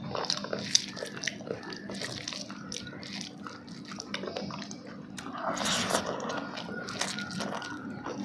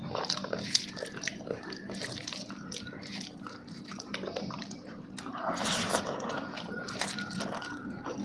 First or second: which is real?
first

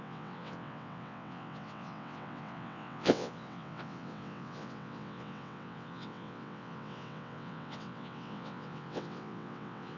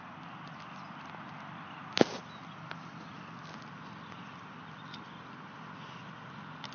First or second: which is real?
second